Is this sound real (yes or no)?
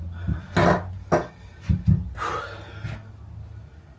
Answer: yes